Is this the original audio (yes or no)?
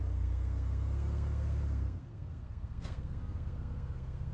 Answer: no